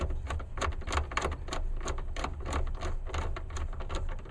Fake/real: real